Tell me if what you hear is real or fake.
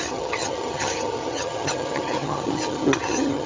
fake